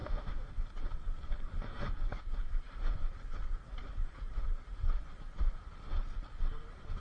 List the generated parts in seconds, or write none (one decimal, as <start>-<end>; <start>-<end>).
0.0-0.5

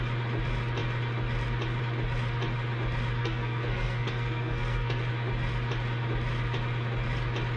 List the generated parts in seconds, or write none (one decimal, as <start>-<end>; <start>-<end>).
3.2-5.1

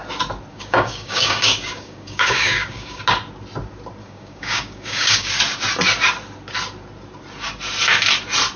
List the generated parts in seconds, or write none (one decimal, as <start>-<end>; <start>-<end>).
0.5-3.0; 4.0-5.3

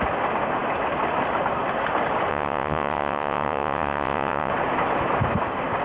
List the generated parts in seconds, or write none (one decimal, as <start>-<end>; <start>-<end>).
2.3-4.5

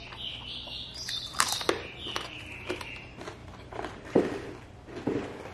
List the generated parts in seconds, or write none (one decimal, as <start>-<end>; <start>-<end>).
1.3-2.4; 3.4-4.2

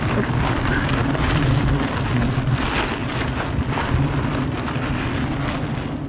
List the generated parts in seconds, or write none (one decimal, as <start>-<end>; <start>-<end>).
none